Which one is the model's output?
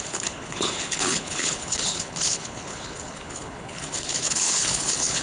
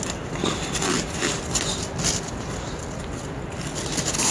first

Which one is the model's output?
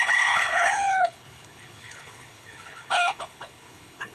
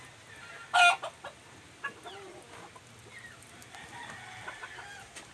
first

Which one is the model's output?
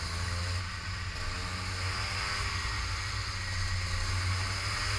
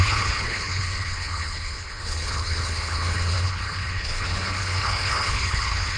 second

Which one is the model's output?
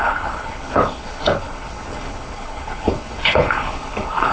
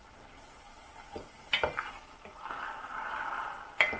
first